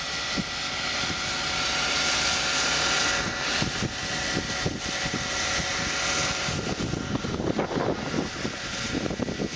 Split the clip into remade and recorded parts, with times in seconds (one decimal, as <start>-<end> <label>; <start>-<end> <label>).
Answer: 0.0-9.6 recorded